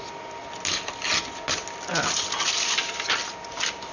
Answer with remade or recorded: recorded